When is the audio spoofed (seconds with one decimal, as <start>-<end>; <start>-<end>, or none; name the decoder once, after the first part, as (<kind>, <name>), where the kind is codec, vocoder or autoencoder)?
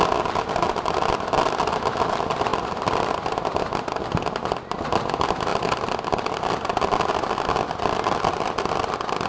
none